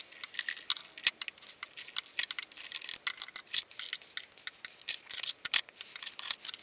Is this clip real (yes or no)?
yes